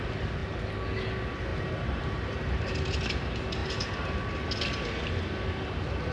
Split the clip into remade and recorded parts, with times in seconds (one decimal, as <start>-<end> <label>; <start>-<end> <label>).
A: 0.0-1.5 recorded; 1.5-2.7 remade; 2.7-6.1 recorded

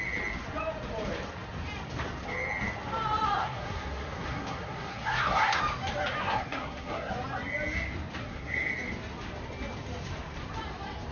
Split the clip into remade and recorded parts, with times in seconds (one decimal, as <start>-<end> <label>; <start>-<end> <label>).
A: 0.0-3.4 recorded; 3.4-5.6 remade; 5.6-6.2 recorded; 6.2-7.1 remade; 7.1-8.2 recorded; 8.2-8.7 remade; 8.7-11.1 recorded